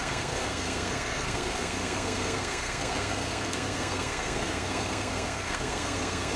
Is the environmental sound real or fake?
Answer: fake